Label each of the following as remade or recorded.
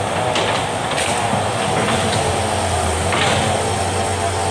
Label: recorded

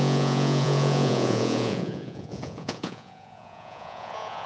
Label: remade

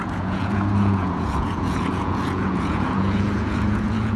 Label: remade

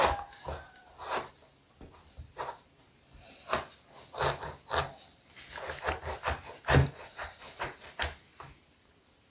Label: recorded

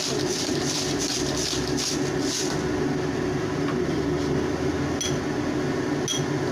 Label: recorded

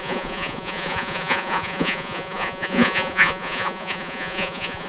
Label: remade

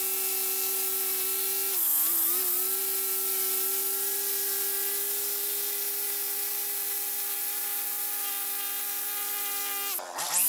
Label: recorded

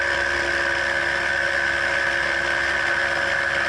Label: recorded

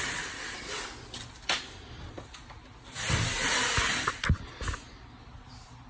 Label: recorded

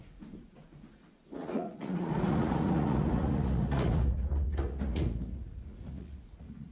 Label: remade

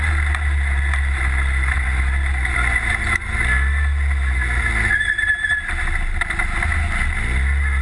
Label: recorded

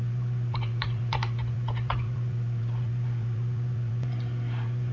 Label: remade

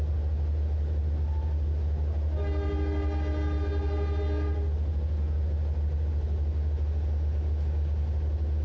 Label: recorded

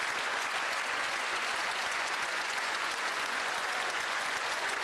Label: remade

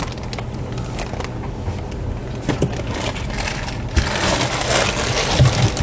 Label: recorded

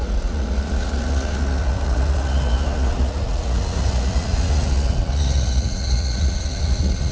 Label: remade